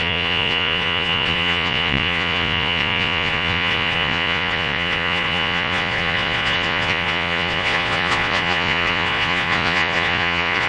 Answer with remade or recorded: remade